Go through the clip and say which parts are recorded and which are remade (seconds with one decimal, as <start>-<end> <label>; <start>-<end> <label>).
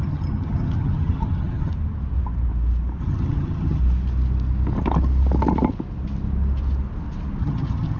0.0-1.7 remade; 1.7-3.0 recorded; 3.0-3.8 remade; 3.8-7.4 recorded; 7.4-8.0 remade